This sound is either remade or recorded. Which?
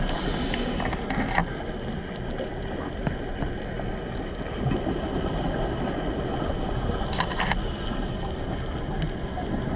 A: recorded